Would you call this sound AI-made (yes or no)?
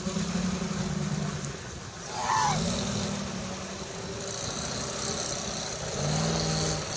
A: no